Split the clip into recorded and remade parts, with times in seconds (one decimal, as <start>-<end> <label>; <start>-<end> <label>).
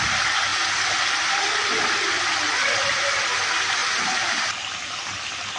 0.0-5.6 recorded